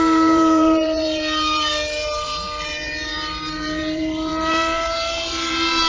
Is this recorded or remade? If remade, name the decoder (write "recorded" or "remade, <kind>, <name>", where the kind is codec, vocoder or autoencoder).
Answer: remade, vocoder, BigVGAN v2